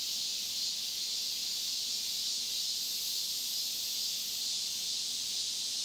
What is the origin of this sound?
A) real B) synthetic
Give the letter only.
A